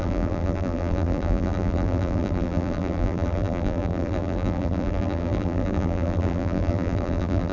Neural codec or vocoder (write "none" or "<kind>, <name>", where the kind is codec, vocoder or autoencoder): vocoder, BigVGAN v2